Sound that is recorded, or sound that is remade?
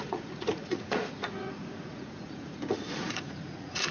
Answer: remade